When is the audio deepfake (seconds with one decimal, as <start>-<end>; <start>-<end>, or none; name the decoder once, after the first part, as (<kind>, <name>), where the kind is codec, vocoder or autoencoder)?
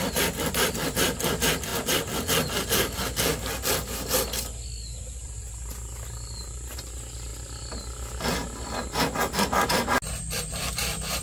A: 0.0-1.7 (vocoder, BigVGAN v2); 5.0-7.3; 10.4-11.2